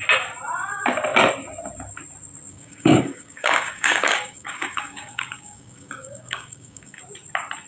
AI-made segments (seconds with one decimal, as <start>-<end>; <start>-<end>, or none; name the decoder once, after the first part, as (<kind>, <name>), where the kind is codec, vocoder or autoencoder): 2.5-7.0 (codec, DAC)